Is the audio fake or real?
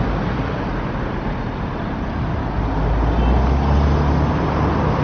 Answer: real